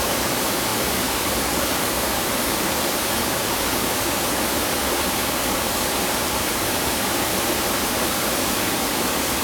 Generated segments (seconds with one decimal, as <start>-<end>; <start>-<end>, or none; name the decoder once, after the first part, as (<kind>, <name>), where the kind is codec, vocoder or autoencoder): 0.0-7.3 (codec, DAC); 7.8-9.4